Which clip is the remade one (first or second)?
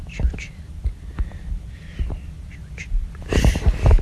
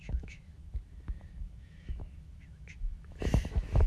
second